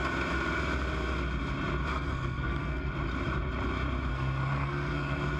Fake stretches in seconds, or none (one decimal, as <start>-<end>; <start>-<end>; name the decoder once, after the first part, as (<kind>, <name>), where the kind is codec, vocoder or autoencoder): 1.9-2.9 (codec, SNAC); 4.1-5.4